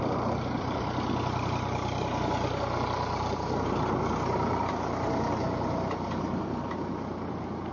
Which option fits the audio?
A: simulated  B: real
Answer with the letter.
B